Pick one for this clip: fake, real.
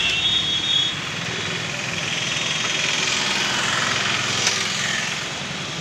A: real